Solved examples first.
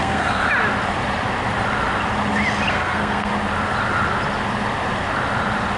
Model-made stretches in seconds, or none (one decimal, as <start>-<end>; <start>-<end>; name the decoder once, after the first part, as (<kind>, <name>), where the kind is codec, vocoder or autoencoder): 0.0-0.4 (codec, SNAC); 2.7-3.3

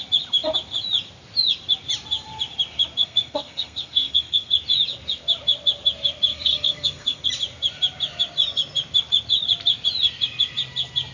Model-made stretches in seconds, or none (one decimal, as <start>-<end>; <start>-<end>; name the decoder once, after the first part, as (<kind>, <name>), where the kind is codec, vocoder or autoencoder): 3.0-4.5 (codec, SNAC); 6.3-7.3

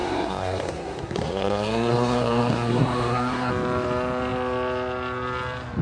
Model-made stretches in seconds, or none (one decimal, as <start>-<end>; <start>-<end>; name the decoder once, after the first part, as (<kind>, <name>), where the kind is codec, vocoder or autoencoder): 0.0-3.5 (codec, SNAC)

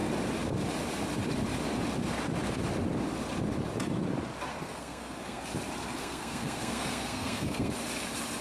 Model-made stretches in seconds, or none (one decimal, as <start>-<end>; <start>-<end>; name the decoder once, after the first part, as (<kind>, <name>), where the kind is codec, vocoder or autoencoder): 4.5-5.4 (codec, SNAC); 6.0-7.7

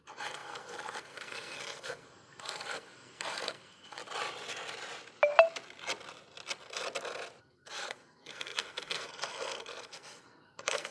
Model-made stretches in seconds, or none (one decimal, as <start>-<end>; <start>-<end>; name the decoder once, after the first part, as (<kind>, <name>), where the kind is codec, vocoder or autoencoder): 0.0-4.0 (codec, SNAC); 7.4-10.9

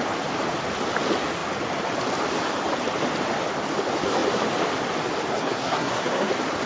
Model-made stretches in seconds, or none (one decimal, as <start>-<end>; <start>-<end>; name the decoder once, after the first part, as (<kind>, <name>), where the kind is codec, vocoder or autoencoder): 5.3-6.3 (codec, SNAC)